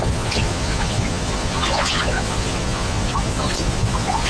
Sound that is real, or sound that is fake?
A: fake